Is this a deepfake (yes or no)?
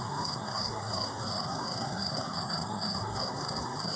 yes